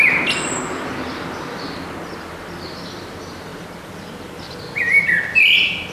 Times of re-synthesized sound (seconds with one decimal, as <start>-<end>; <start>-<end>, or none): none